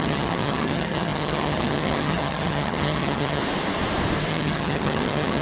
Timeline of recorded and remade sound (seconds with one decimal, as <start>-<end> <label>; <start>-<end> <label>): 0.0-3.4 remade; 3.4-4.3 recorded; 4.3-5.4 remade